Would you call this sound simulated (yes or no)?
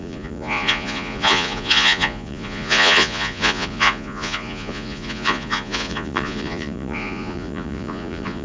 yes